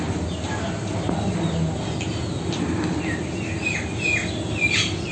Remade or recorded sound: recorded